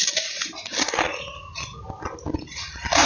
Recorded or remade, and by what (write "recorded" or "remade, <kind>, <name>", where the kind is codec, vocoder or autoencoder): recorded